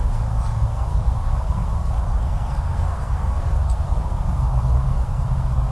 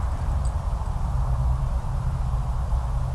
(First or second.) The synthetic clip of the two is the first